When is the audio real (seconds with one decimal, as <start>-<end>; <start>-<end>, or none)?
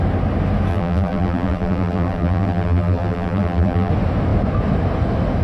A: 0.0-0.7; 3.9-5.4